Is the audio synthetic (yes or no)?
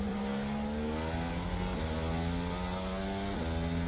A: no